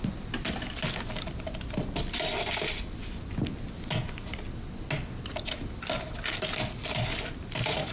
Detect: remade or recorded recorded